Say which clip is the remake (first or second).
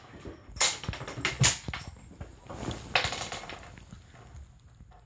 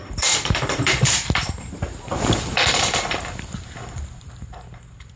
second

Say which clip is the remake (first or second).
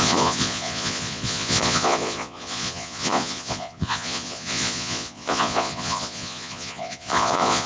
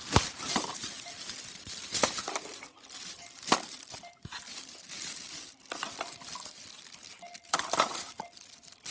first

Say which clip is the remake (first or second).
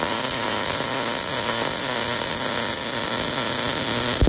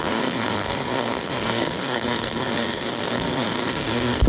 second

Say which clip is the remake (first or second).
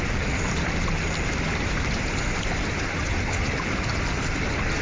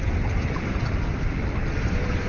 first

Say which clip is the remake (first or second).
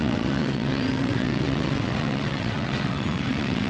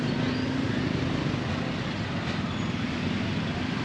first